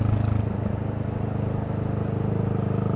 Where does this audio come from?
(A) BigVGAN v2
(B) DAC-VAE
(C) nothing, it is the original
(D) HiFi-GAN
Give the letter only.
C